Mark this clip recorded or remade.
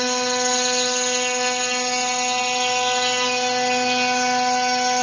recorded